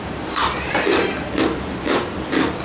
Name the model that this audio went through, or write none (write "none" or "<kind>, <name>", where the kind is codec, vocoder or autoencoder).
none